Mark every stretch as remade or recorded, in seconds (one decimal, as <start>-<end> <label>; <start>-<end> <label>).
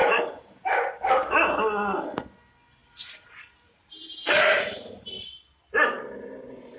0.0-0.9 remade; 0.9-2.8 recorded; 2.8-5.1 remade; 5.1-6.8 recorded